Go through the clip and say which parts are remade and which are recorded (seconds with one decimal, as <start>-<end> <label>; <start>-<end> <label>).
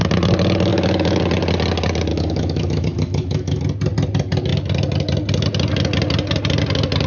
0.0-0.7 recorded; 0.7-1.2 remade; 1.2-2.1 recorded; 2.1-3.6 remade; 3.6-7.1 recorded